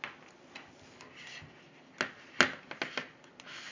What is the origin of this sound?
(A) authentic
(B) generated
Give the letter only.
A